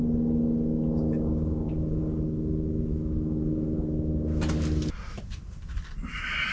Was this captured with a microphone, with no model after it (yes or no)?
yes